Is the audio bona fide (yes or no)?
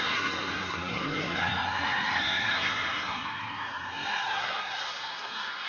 no